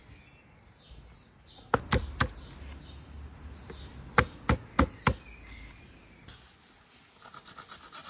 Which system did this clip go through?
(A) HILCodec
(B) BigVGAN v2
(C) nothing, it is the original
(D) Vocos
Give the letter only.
C